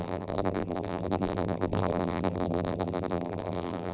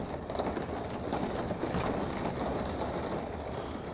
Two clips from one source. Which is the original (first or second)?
second